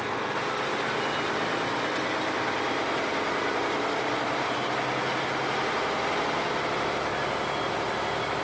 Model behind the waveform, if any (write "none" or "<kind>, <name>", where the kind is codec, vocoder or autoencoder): none